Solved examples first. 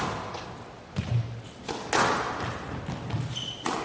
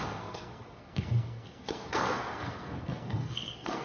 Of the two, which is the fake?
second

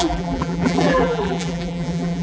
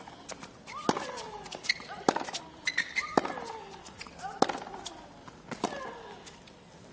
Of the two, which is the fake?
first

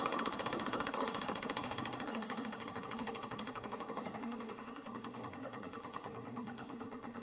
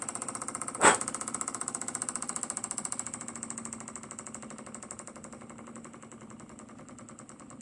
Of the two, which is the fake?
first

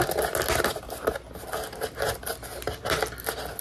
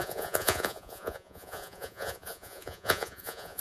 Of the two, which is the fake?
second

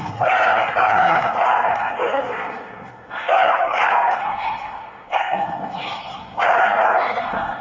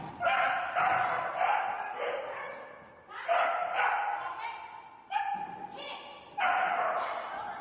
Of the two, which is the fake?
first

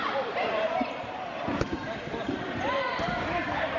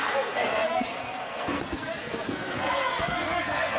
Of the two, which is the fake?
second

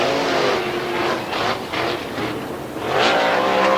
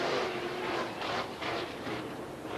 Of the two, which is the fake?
second